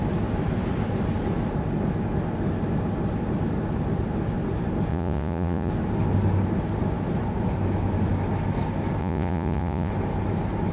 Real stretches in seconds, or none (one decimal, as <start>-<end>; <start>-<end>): 0.0-4.9; 5.7-9.0; 9.9-10.7